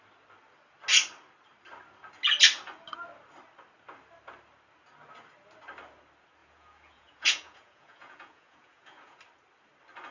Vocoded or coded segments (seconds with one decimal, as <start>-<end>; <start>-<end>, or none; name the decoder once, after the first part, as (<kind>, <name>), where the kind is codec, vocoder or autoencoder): 6.4-9.2 (vocoder, Vocos)